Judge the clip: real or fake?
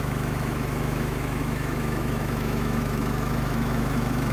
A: fake